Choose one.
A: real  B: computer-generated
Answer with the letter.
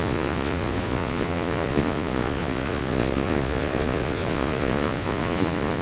B